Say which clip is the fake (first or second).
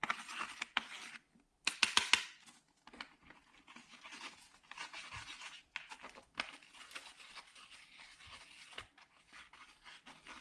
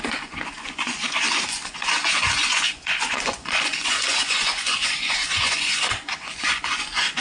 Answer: second